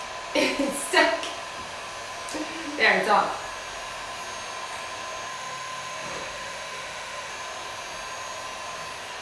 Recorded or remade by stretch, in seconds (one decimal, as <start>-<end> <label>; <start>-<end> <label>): 0.0-5.3 recorded; 5.3-7.3 remade; 7.3-9.2 recorded